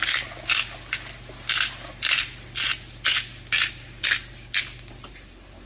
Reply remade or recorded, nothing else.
recorded